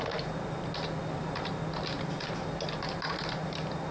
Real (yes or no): yes